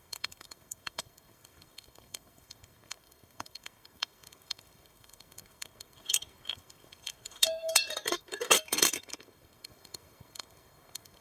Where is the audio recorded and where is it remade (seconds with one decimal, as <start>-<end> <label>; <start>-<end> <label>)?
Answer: 0.0-11.2 remade